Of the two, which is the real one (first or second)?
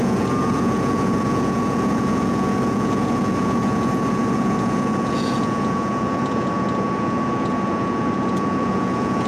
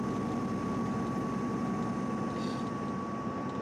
second